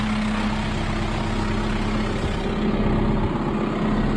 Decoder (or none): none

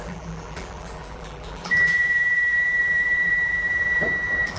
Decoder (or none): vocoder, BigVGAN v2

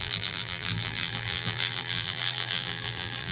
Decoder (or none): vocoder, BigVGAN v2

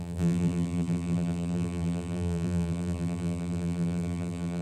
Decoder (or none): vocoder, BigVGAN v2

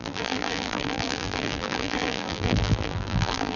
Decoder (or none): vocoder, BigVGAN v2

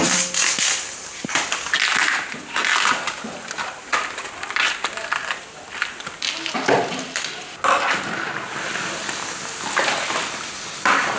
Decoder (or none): none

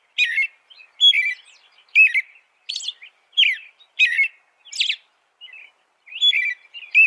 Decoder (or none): none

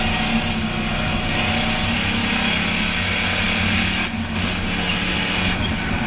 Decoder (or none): none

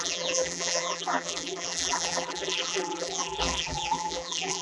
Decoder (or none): vocoder, BigVGAN v2